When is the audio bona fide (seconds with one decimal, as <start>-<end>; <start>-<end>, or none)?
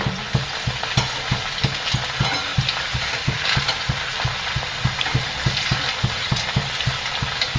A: 0.0-2.5; 3.6-4.1; 7.0-7.6